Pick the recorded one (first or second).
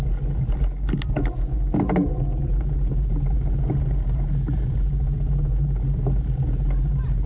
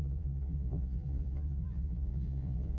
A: first